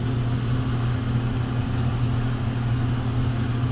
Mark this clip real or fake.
real